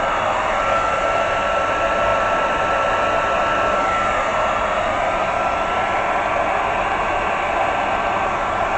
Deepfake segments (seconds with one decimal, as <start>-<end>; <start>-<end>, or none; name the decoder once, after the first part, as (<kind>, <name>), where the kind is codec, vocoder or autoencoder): none